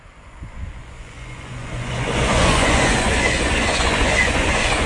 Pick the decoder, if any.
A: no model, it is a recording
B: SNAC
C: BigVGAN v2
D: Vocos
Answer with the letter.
D